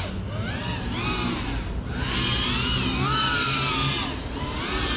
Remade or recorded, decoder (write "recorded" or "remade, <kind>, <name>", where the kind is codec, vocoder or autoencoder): recorded